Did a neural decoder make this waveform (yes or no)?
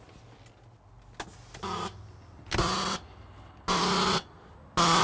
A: no